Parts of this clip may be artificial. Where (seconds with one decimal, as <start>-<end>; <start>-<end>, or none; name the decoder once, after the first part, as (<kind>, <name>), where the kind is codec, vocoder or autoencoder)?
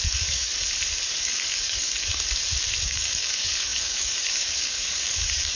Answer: 0.0-0.5 (codec, DAC); 1.2-2.1; 2.8-5.5